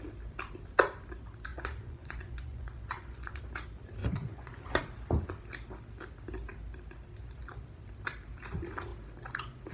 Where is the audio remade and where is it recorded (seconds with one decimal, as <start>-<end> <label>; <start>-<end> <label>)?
0.0-1.5 recorded; 1.5-3.4 remade; 3.4-4.0 recorded; 4.0-4.8 remade; 4.8-9.7 recorded